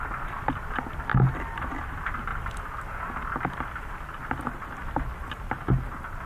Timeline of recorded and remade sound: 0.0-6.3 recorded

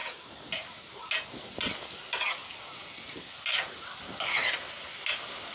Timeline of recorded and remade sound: 0.0-5.5 recorded

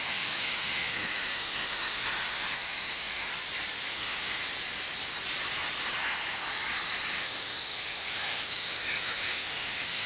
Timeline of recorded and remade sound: 0.0-3.3 remade; 3.3-3.9 recorded; 3.9-4.4 remade; 4.4-7.1 recorded; 7.1-10.1 remade

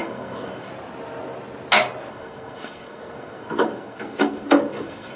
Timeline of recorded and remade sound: 0.0-0.7 remade; 0.7-2.1 recorded; 2.1-5.2 remade